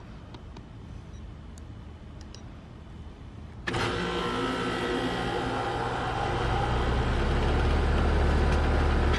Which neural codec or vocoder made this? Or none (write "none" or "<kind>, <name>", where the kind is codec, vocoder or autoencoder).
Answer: none